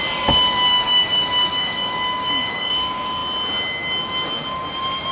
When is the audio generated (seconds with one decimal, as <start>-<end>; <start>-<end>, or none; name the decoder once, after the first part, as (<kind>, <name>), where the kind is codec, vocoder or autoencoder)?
0.7-2.7 (codec, DAC)